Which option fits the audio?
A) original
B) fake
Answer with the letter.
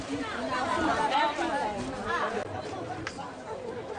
B